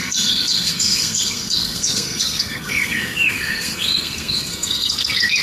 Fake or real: fake